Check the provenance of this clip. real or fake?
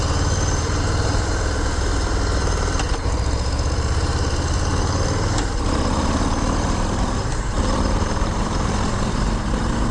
fake